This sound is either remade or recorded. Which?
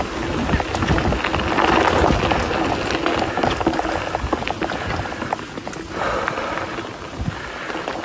recorded